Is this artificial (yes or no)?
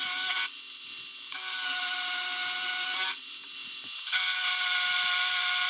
no